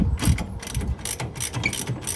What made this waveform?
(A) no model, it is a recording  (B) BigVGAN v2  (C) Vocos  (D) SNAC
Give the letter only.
A